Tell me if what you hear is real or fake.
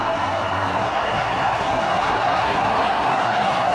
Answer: fake